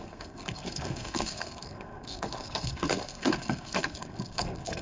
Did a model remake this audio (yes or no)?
yes